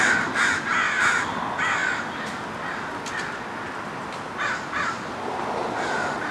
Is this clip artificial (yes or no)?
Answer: no